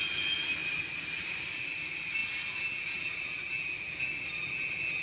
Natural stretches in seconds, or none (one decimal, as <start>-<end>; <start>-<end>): 0.0-5.0